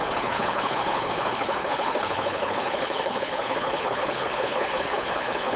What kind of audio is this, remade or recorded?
remade